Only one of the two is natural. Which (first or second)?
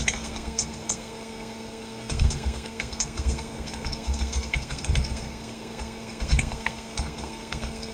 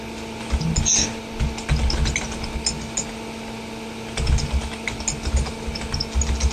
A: second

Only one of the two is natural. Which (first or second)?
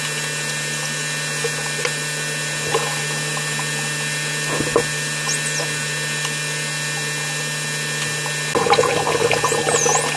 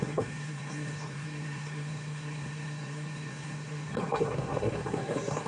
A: first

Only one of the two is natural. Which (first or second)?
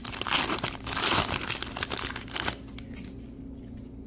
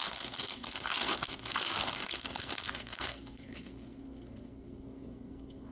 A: first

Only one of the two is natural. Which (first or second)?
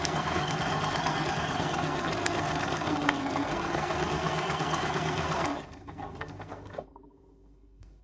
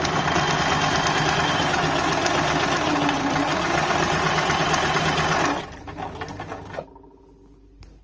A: second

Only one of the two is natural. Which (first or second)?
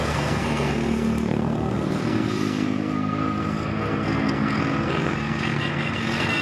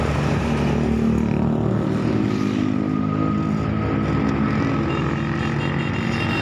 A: second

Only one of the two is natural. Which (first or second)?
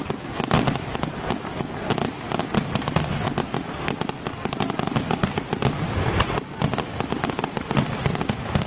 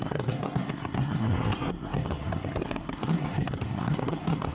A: first